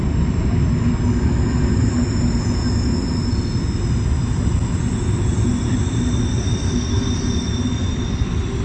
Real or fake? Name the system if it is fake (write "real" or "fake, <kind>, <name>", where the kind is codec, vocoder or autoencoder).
real